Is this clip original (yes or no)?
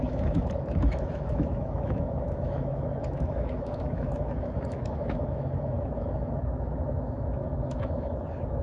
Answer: no